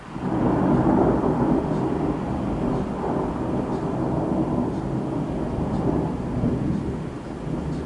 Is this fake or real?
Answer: real